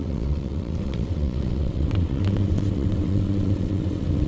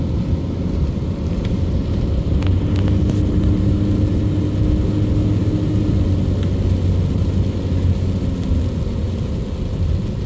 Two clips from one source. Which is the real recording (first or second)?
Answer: second